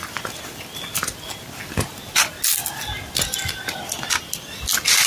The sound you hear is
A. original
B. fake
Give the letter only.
A